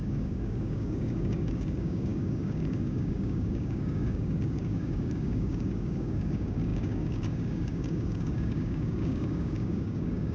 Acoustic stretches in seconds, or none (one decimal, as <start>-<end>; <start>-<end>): none